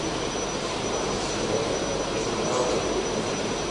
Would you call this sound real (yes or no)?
yes